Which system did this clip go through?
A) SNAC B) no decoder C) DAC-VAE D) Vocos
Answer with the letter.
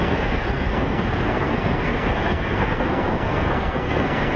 A